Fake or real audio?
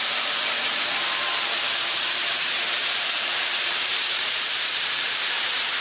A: fake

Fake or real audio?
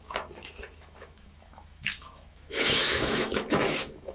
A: fake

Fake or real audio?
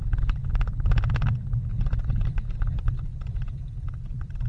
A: fake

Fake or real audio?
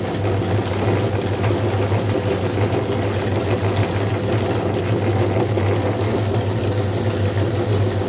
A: real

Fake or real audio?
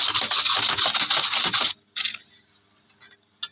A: real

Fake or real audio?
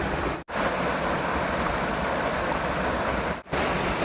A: real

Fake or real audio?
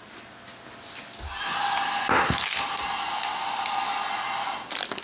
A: real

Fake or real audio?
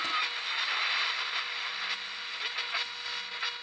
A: real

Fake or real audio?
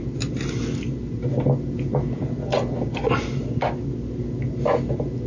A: real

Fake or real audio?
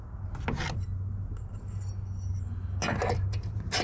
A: real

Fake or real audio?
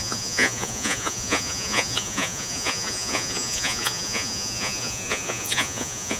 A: fake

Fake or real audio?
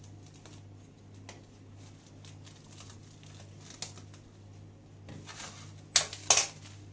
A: real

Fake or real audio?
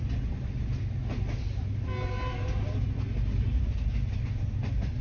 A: real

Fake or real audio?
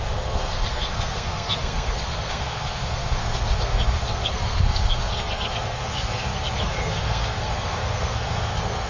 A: fake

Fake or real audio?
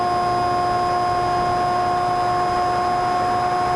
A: real